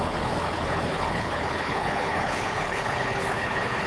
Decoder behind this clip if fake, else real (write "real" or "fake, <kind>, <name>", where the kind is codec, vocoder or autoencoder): fake, codec, HILCodec